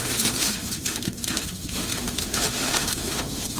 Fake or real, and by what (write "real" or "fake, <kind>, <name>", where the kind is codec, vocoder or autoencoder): fake, autoencoder, DAC-VAE